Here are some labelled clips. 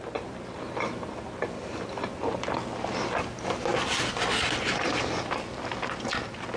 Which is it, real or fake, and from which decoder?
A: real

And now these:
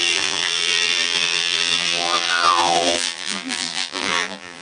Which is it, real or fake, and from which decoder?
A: fake, vocoder, BigVGAN v2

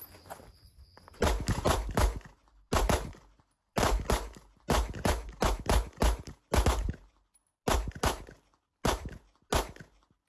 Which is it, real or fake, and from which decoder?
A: real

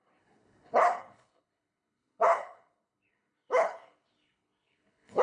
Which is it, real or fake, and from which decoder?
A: fake, codec, HILCodec